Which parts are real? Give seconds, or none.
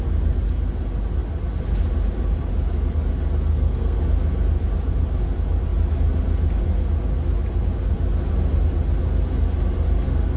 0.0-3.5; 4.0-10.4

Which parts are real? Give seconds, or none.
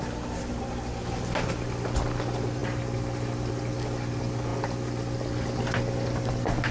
0.0-6.7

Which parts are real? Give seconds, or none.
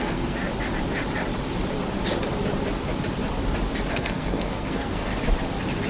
0.4-3.9; 5.1-5.9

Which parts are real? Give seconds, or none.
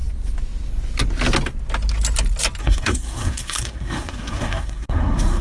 0.0-2.6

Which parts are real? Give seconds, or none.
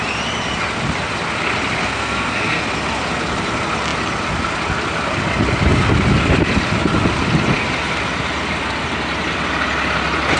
0.0-1.8; 2.6-10.4